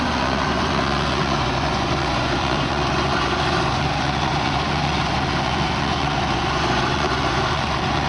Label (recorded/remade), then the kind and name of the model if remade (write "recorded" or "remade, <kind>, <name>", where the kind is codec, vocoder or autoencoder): remade, vocoder, Vocos